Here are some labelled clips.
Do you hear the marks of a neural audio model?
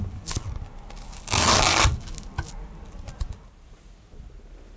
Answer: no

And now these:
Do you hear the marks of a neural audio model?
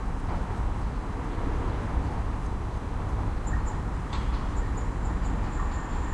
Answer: no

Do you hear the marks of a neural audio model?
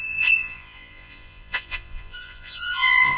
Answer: yes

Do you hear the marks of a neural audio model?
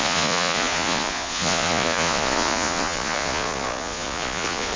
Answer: yes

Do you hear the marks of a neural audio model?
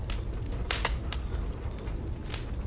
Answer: no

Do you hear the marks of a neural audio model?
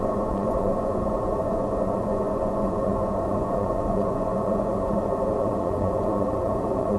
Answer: yes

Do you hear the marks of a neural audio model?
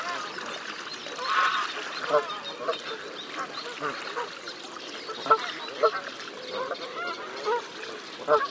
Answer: no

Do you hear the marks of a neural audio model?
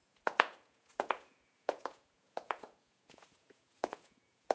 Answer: yes